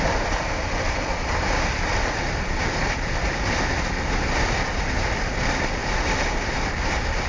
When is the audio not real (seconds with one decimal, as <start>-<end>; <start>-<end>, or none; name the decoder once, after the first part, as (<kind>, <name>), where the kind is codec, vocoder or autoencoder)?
none